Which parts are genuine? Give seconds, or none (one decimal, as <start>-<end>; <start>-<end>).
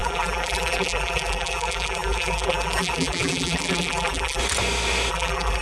4.4-5.1